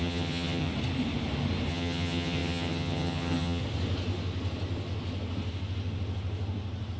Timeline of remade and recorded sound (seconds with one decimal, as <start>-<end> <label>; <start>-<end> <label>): 0.0-0.7 remade; 0.7-1.7 recorded; 1.7-3.6 remade; 3.6-7.0 recorded